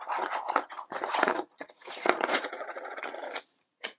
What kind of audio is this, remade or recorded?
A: remade